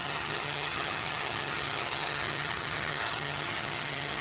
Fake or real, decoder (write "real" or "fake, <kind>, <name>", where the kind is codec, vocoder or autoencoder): fake, vocoder, HiFi-GAN